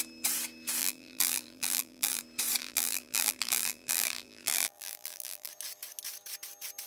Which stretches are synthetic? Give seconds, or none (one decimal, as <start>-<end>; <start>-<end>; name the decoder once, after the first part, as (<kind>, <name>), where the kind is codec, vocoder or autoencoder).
0.8-2.2 (vocoder, BigVGAN v2); 2.6-5.5